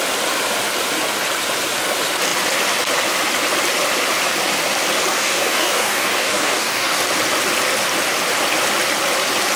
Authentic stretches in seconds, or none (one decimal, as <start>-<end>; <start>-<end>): 0.0-5.1; 7.0-9.6